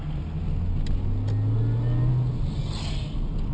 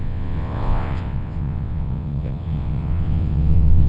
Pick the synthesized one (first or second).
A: second